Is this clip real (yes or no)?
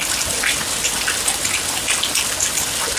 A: yes